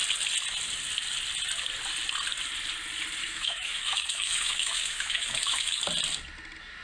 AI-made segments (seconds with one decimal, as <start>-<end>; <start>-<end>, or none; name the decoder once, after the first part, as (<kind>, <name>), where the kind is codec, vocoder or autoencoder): 3.2-5.8 (autoencoder, DAC-VAE)